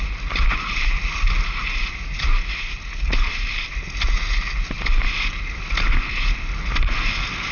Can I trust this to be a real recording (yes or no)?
yes